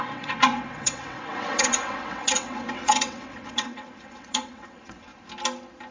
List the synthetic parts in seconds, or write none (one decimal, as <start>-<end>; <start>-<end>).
0.0-5.1